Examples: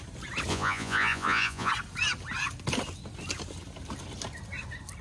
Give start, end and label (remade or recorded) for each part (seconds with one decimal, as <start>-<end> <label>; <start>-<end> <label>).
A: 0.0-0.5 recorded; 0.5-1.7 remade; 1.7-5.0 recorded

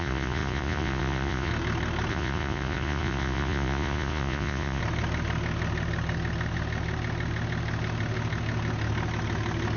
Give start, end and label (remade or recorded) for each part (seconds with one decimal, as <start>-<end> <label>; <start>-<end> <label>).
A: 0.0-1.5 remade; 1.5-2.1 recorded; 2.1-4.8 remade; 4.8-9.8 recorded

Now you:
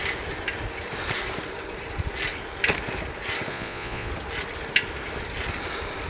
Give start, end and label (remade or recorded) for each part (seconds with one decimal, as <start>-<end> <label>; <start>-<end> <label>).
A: 0.0-3.5 recorded; 3.5-4.1 remade; 4.1-6.1 recorded